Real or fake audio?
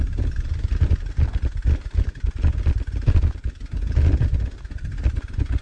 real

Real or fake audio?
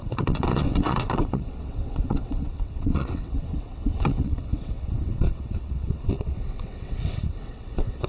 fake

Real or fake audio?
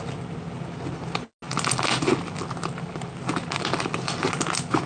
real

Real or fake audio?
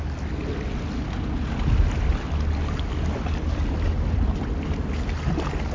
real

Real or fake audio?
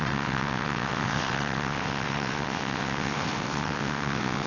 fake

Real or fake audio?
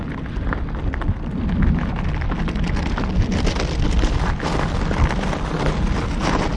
real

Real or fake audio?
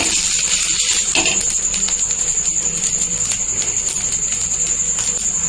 real